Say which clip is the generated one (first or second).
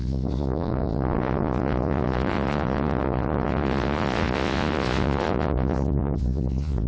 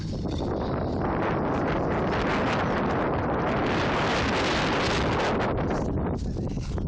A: first